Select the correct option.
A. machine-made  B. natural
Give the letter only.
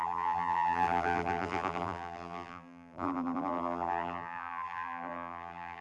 A